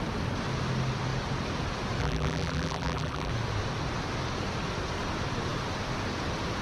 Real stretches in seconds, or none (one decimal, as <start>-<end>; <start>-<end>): 0.0-2.0; 3.3-6.6